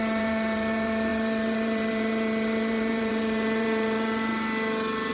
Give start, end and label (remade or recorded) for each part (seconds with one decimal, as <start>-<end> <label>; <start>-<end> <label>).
0.0-4.3 remade; 4.3-5.1 recorded